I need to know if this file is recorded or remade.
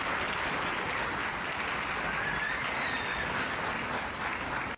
recorded